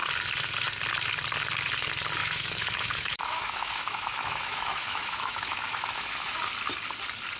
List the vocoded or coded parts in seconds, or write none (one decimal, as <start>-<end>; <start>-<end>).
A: 2.2-6.4